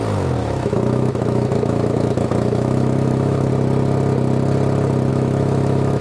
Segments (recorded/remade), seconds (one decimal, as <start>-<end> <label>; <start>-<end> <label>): 0.0-0.4 recorded; 0.4-3.5 remade; 3.5-5.1 recorded; 5.1-6.0 remade

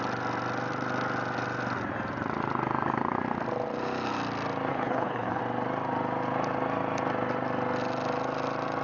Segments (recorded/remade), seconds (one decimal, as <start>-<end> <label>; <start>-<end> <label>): 0.0-4.7 recorded; 4.7-5.4 remade; 5.4-8.8 recorded

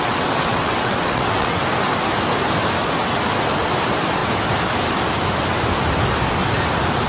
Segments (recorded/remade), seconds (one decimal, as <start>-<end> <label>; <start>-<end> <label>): 0.0-1.6 remade; 1.6-7.1 recorded

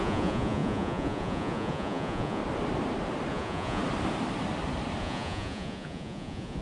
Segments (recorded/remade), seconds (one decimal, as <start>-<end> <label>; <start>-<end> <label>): 0.0-2.4 remade; 2.4-3.3 recorded; 3.3-3.8 remade; 3.8-5.0 recorded; 5.0-6.6 remade